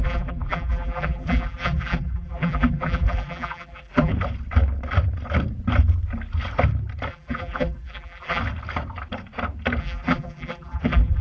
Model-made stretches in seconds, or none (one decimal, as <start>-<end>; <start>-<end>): 0.0-4.1; 7.1-8.4; 9.8-11.2